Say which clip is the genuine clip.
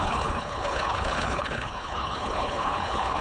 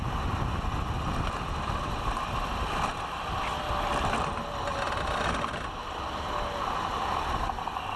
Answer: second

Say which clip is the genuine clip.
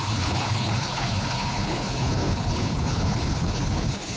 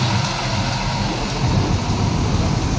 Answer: second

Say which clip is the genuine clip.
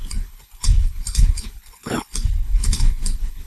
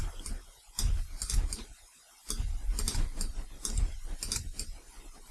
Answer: second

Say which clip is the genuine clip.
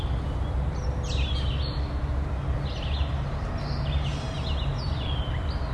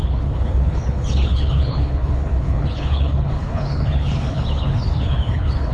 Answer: first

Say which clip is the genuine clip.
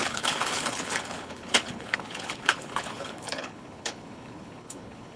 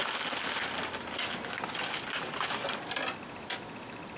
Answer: second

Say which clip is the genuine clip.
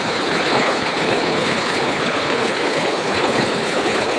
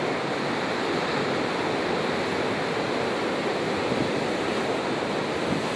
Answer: second